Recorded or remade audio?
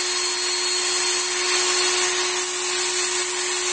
recorded